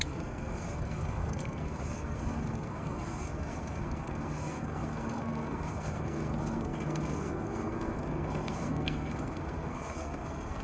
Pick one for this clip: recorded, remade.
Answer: remade